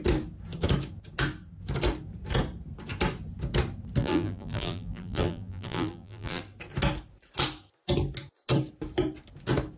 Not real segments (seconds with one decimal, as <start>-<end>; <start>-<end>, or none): 4.0-6.4